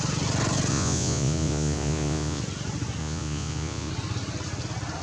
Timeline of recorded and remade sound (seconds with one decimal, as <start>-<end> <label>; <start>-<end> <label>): 0.0-0.7 recorded; 0.7-2.4 remade; 2.4-3.0 recorded; 3.0-3.9 remade; 3.9-5.0 recorded